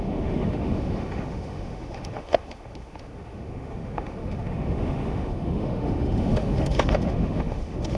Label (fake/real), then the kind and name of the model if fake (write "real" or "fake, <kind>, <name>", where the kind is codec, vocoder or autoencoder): fake, autoencoder, DAC-VAE